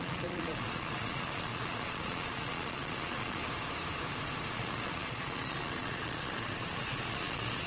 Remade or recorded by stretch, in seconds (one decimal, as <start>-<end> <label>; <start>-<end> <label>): 0.0-3.4 remade; 3.4-4.5 recorded; 4.5-7.7 remade